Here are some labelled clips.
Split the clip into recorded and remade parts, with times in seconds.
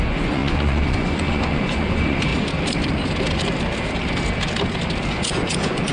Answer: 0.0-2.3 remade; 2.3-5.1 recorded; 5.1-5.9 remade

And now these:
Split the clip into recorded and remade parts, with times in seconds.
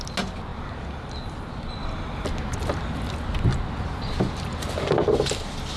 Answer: 0.0-5.8 recorded